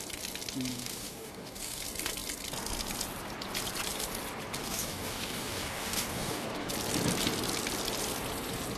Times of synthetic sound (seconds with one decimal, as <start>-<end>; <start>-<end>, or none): 0.7-1.8; 4.6-6.7